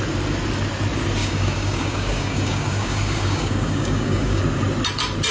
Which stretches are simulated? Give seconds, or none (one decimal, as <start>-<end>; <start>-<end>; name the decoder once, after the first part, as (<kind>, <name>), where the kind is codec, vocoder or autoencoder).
1.2-4.4 (codec, DAC)